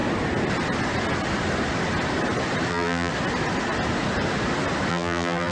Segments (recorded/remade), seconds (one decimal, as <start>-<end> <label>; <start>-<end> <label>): 0.0-2.7 recorded; 2.7-3.1 remade; 3.1-4.9 recorded; 4.9-5.5 remade